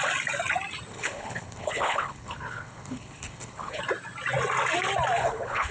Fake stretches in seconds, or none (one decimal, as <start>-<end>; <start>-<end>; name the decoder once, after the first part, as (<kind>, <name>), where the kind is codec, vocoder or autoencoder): 0.9-3.8 (codec, HILCodec); 5.2-5.7